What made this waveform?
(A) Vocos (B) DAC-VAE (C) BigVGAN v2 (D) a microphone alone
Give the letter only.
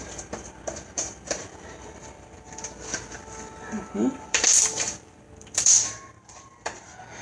C